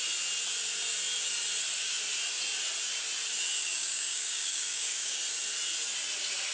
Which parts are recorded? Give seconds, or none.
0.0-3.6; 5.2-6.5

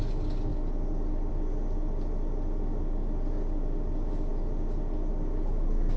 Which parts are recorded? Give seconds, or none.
0.0-6.0

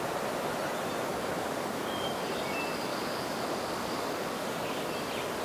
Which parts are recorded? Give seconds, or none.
0.0-1.1; 2.3-2.9; 4.9-5.4

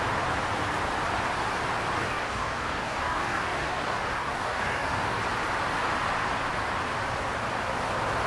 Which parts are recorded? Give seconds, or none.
0.0-2.0; 5.2-8.3

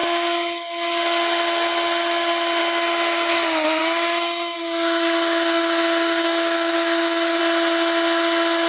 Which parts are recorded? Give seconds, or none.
0.0-3.8; 7.4-8.7

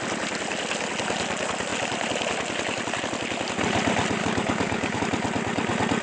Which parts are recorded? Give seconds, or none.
0.0-4.2; 5.0-6.0